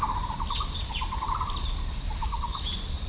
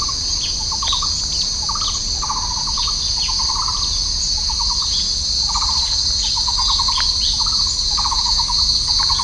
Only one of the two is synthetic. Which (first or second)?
first